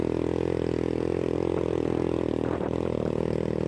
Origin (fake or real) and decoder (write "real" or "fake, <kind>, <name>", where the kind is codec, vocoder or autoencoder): real